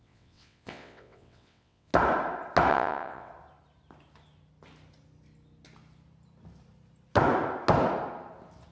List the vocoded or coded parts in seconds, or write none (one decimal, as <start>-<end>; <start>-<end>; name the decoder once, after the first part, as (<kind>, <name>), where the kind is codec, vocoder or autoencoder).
0.0-1.9 (vocoder, WaveNeXt); 2.7-3.3